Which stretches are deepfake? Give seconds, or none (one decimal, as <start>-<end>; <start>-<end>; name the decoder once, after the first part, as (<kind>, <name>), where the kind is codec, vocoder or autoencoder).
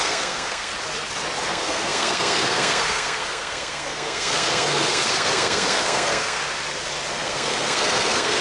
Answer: 0.0-0.7 (codec, SNAC); 1.4-6.4; 7.1-8.4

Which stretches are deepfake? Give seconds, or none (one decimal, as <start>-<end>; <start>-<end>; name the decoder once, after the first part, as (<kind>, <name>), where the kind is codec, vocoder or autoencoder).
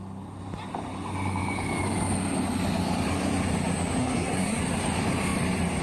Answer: 4.0-4.6 (codec, SNAC)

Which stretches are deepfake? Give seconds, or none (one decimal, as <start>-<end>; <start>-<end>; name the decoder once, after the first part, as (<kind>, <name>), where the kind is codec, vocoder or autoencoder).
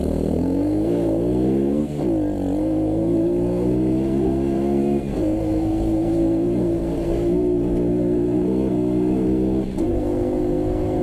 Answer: 0.0-2.0 (codec, SNAC); 2.6-11.0